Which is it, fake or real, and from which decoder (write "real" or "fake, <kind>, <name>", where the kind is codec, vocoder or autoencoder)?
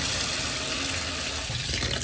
real